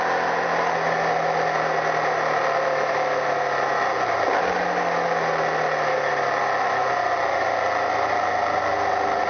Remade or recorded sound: recorded